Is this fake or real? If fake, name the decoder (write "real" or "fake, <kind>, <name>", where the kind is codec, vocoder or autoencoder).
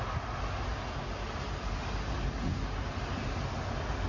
real